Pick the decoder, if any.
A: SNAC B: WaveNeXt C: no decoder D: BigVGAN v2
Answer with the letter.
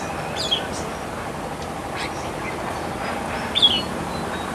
C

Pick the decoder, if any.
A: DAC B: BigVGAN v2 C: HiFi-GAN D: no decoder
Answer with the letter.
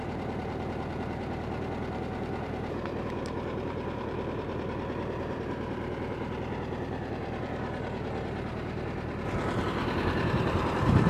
B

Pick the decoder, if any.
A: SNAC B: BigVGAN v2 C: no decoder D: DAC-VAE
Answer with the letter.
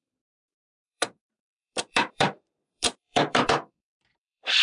B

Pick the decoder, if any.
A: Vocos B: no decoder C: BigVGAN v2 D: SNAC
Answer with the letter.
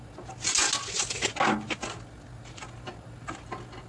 B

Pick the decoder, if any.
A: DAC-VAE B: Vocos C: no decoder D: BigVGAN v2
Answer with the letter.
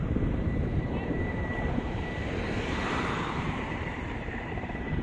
D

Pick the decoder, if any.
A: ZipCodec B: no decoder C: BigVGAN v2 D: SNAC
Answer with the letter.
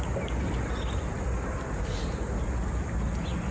B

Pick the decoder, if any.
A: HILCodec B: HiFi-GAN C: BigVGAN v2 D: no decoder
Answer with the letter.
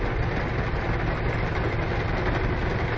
D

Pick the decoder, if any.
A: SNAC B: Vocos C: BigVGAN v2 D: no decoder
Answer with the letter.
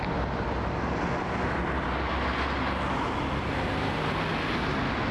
D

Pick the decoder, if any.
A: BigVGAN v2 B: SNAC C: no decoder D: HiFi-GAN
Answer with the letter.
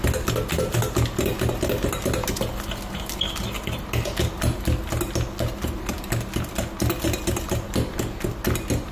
C